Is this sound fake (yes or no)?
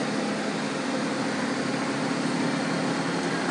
no